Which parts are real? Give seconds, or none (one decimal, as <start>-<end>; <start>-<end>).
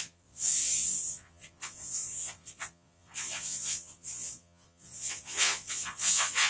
none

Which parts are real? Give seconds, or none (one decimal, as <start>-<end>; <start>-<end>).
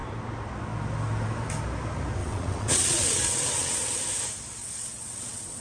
0.0-2.2; 4.0-4.6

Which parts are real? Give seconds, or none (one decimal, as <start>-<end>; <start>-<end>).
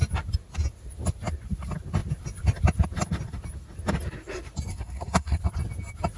0.0-4.7; 5.4-6.2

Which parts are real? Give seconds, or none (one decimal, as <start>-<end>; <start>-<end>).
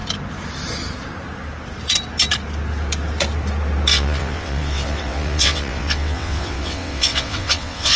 0.0-3.9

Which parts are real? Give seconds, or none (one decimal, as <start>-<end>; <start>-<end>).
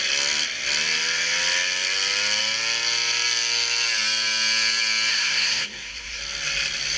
0.0-5.1; 6.2-7.0